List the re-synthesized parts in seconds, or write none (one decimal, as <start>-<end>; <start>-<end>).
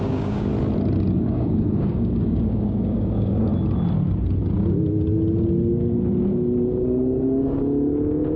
0.0-0.5; 1.2-3.5